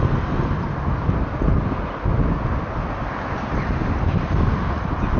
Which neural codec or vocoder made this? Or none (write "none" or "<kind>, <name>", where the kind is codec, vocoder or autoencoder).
none